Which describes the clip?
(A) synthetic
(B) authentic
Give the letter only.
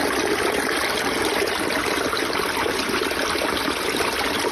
B